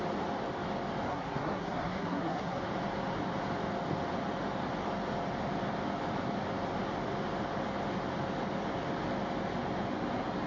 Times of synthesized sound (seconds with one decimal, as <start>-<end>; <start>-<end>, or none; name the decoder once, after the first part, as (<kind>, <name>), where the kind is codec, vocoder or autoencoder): 1.1-2.6 (codec, SNAC)